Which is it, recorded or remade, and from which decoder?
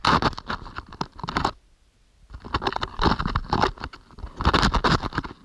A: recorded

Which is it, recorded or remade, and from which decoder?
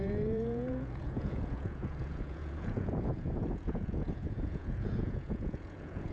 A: remade, vocoder, Vocos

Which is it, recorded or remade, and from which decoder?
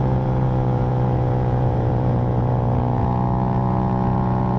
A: remade, vocoder, Vocos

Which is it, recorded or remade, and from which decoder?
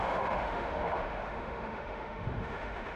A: remade, autoencoder, DAC-VAE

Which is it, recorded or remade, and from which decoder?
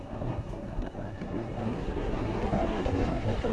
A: remade, codec, SNAC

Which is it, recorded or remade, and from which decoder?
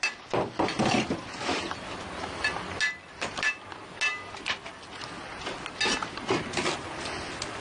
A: recorded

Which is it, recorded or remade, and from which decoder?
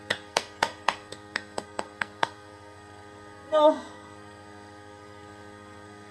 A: remade, codec, SNAC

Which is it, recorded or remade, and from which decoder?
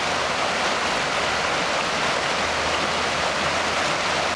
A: recorded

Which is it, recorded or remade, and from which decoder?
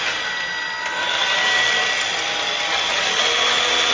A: recorded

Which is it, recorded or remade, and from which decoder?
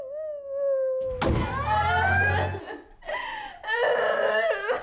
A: recorded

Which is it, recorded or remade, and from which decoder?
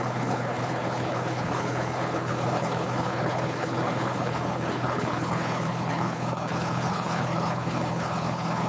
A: remade, codec, HILCodec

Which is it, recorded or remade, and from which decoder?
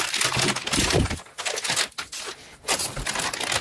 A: recorded